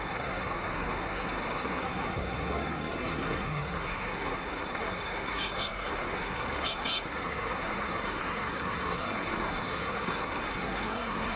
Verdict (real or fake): fake